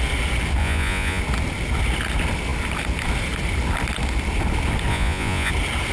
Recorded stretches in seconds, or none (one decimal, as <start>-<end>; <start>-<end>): 0.0-0.6; 1.2-4.9; 5.5-5.9

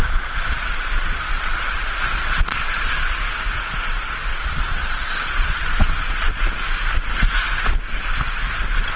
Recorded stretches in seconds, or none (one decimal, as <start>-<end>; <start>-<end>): 3.2-4.3; 6.3-9.0

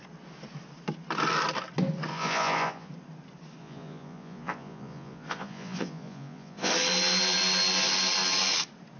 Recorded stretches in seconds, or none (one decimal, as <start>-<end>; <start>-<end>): 0.0-2.1; 2.9-3.6; 6.7-9.0

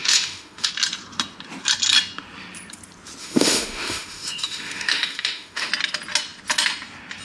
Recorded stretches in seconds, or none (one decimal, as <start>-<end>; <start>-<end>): 0.7-3.2; 5.7-7.2